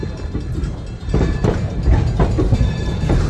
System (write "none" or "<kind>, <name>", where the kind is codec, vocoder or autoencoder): vocoder, BigVGAN v2